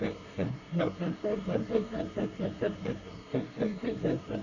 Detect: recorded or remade remade